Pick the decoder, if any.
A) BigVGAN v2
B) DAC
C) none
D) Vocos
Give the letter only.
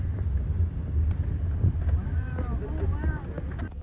C